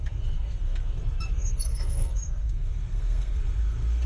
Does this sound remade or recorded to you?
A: remade